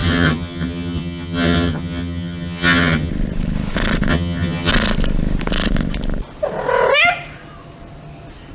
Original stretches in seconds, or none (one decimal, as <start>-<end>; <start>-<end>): 3.1-4.1; 4.7-8.5